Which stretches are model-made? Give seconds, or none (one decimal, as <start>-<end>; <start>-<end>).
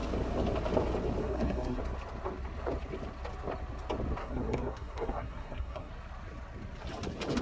1.2-1.8; 4.2-5.9